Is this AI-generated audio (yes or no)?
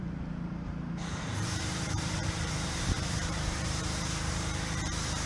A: yes